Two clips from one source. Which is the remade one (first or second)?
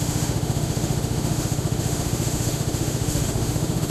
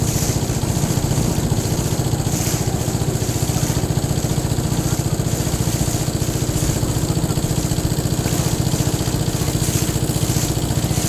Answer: first